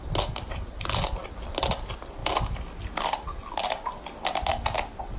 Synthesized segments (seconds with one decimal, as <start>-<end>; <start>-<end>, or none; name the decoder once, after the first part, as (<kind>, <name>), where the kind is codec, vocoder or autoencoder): none